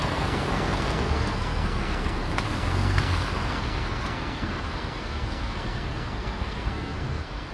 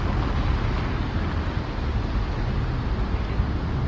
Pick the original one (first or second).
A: second